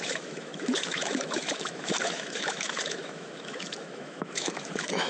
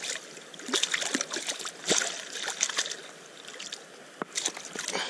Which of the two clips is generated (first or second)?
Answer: first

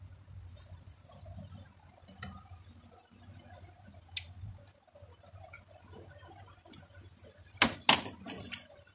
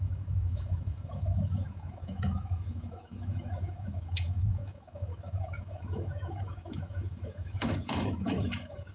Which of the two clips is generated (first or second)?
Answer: second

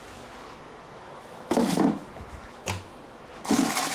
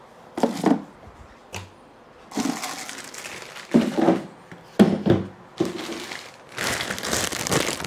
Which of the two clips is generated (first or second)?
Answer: first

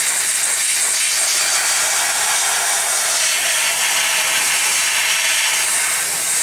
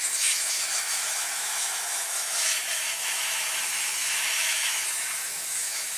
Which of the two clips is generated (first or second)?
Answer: second